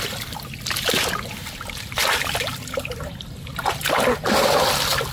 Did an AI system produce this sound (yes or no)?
no